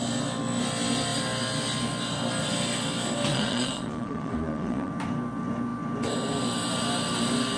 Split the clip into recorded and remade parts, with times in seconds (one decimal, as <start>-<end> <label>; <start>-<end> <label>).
0.0-3.3 recorded; 3.3-4.9 remade; 4.9-7.6 recorded